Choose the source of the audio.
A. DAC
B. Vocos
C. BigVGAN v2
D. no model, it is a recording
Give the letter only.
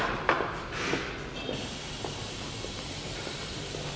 D